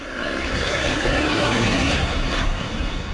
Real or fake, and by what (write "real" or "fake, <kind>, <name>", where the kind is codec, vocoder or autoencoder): fake, codec, SNAC